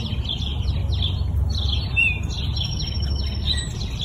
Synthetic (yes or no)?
no